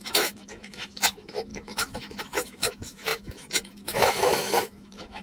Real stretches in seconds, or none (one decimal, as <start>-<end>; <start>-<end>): none